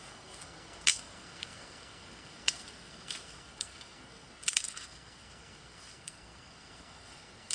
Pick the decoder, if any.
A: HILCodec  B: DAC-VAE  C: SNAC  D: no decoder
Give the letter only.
C